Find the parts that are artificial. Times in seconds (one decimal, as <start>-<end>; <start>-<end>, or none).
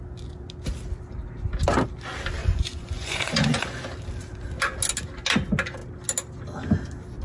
2.4-3.8